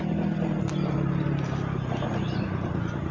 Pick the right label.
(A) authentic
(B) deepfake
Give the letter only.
A